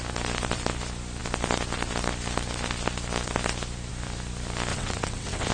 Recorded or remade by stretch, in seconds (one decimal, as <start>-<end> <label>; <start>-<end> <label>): 0.0-4.7 recorded; 4.7-5.5 remade